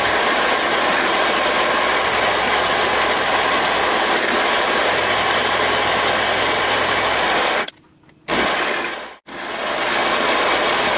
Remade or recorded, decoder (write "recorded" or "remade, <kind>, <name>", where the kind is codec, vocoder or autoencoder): recorded